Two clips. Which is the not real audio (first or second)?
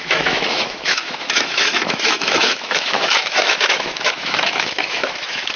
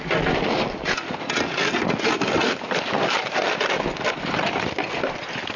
first